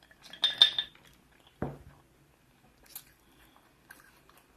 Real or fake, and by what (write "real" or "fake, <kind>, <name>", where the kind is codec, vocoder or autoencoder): real